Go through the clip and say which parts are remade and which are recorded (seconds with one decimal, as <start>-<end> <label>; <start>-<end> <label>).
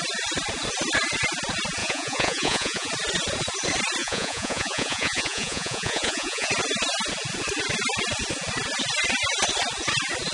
0.0-1.8 recorded; 1.8-2.9 remade; 2.9-4.0 recorded; 4.0-6.5 remade; 6.5-10.3 recorded